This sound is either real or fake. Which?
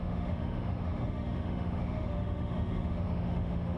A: fake